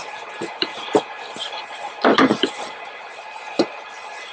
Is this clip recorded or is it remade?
remade